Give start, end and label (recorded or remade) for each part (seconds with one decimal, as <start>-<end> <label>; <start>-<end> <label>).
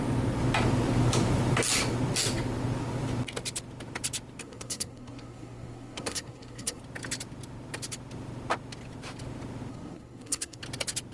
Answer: 0.0-4.4 recorded; 4.4-6.8 remade; 6.8-9.7 recorded; 9.7-10.6 remade; 10.6-11.1 recorded